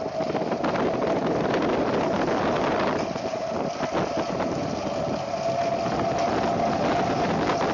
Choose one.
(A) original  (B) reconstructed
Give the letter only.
A